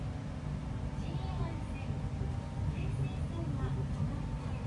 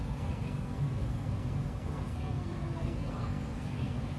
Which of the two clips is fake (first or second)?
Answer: second